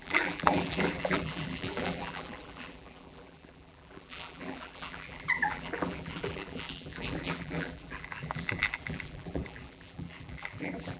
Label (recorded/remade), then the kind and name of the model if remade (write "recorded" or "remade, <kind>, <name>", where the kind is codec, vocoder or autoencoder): remade, vocoder, BigVGAN v2